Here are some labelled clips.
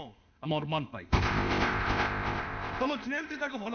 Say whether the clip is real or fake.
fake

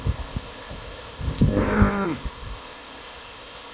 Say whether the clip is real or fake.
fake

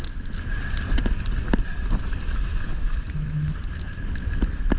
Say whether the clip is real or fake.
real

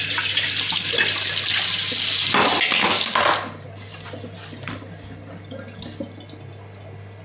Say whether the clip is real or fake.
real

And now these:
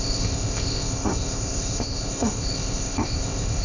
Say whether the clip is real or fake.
fake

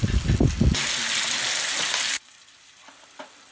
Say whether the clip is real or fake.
real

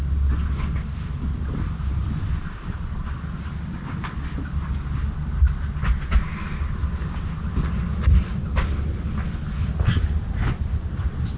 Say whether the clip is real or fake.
real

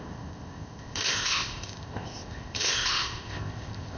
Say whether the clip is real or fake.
fake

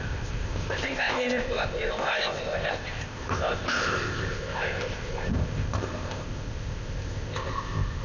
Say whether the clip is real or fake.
fake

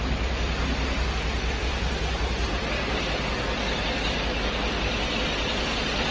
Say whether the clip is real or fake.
real